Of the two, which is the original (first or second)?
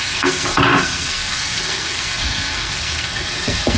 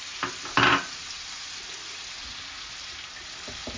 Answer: second